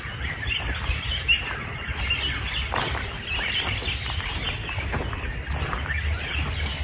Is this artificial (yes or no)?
no